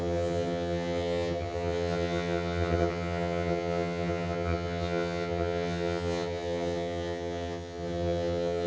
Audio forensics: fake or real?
fake